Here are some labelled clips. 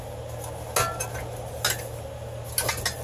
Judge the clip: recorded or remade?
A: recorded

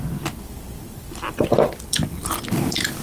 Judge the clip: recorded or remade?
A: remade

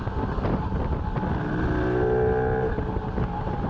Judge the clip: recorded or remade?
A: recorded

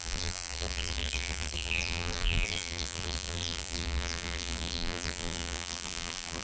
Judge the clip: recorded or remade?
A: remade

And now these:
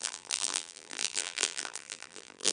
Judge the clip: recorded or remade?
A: remade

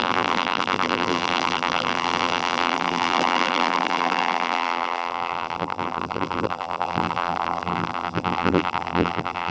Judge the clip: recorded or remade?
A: remade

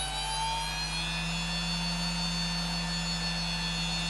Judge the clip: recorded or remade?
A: recorded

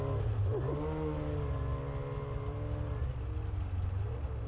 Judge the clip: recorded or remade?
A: recorded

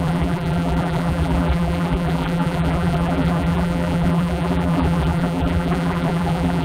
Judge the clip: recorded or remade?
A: remade